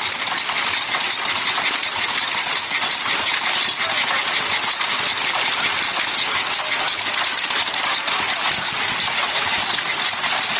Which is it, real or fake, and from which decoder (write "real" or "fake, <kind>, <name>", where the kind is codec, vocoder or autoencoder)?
real